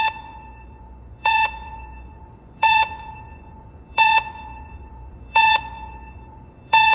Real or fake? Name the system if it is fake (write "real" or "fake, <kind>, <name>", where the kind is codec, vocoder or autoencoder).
fake, vocoder, Vocos